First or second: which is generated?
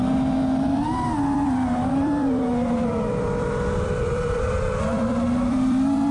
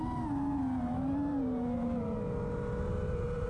first